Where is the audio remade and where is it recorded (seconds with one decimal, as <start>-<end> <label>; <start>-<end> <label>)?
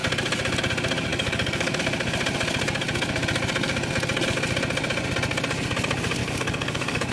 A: 0.0-1.1 recorded; 1.1-1.8 remade; 1.8-6.2 recorded; 6.2-7.1 remade